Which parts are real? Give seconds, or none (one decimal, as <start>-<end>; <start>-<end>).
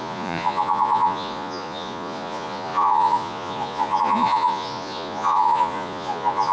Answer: none